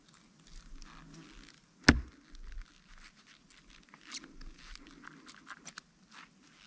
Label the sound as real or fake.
real